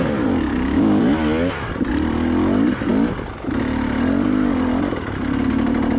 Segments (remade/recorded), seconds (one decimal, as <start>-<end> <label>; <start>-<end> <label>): 0.0-0.5 recorded; 0.5-1.0 remade; 1.0-6.0 recorded